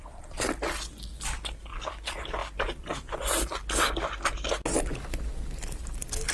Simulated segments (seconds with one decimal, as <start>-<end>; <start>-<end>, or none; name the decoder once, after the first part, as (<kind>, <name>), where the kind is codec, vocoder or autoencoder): 2.4-3.2 (vocoder, BigVGAN v2)